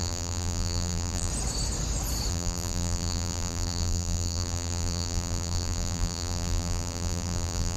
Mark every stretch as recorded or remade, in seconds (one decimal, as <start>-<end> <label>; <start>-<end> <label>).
0.0-1.3 remade; 1.3-2.3 recorded; 2.3-7.8 remade